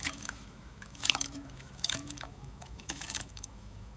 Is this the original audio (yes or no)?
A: no